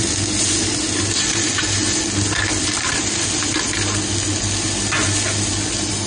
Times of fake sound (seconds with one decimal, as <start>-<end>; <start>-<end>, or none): none